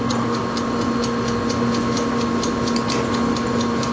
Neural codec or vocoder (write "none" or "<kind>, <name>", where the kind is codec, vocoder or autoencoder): none